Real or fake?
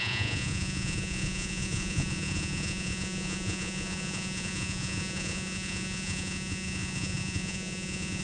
fake